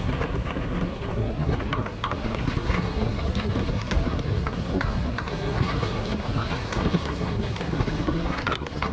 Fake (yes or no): yes